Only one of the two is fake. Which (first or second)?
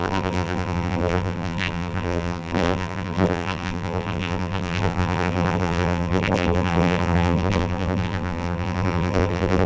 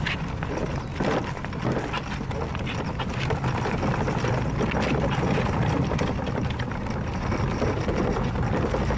first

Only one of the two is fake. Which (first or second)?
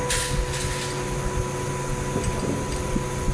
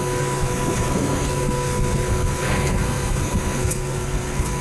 second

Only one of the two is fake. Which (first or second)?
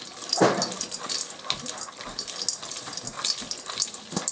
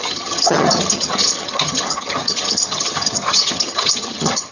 second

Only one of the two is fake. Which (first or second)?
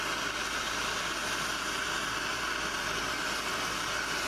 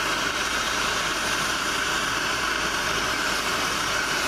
second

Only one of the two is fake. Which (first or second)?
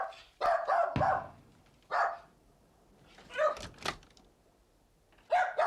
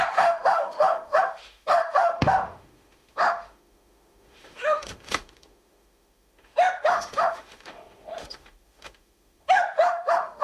second